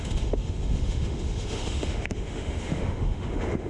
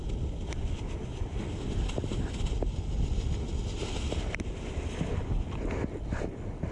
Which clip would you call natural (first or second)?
second